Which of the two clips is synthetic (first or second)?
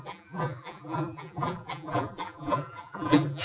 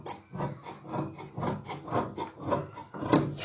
first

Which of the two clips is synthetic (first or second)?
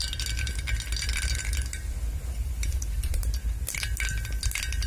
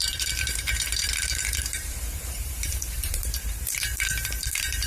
second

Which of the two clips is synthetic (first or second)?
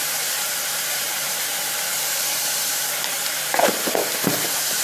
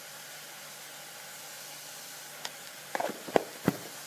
first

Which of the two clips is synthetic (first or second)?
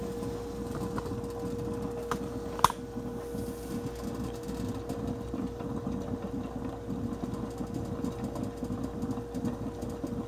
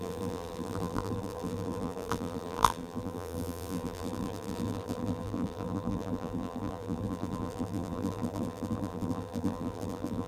second